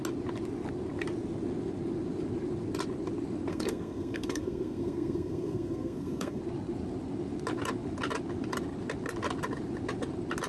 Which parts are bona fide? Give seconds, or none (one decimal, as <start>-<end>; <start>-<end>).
0.0-3.5; 6.4-10.5